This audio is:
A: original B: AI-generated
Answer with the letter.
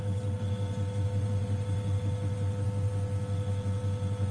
A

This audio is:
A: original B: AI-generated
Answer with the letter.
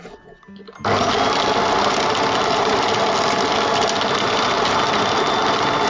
A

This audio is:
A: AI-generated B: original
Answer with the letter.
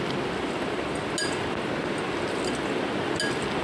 B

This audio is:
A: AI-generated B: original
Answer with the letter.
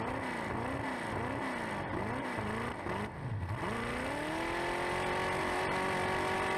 B